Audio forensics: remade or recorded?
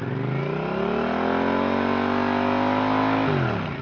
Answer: recorded